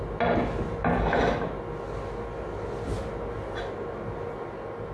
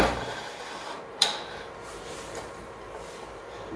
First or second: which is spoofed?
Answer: second